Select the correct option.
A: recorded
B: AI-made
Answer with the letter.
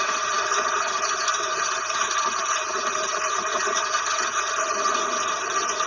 A